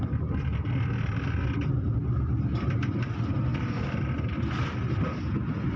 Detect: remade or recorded recorded